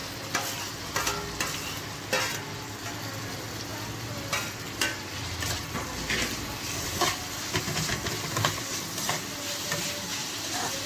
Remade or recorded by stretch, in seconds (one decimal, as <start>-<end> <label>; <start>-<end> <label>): 0.0-10.9 recorded